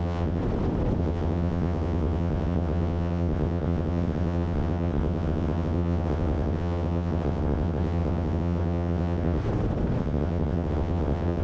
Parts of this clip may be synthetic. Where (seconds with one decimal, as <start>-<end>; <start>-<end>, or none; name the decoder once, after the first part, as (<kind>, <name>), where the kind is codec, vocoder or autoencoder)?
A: 0.0-0.4 (vocoder, WaveNeXt); 1.0-9.4; 10.0-11.4